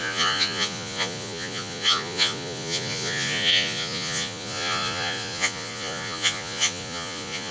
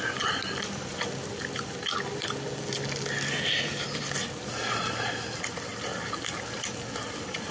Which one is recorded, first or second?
second